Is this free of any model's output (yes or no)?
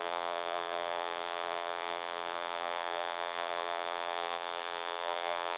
no